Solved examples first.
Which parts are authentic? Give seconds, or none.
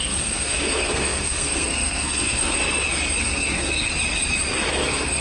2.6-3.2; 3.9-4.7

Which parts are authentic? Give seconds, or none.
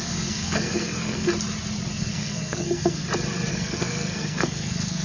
1.3-2.0; 3.0-3.5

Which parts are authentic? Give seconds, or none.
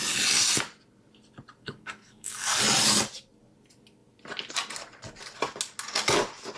0.0-1.6; 2.6-6.6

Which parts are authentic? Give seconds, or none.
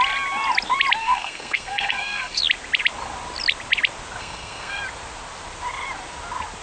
0.0-1.0; 2.4-4.2; 4.8-6.6